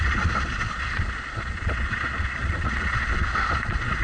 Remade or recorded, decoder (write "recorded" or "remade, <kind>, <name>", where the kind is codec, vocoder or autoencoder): remade, vocoder, Vocos